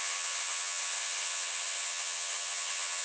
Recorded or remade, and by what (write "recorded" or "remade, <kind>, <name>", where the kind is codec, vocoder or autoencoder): remade, vocoder, HiFi-GAN